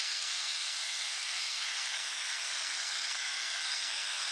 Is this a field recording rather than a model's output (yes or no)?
no